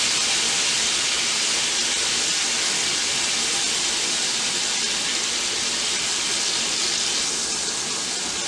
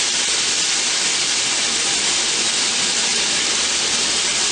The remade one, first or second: second